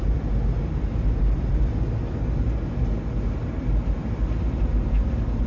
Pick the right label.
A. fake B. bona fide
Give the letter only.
B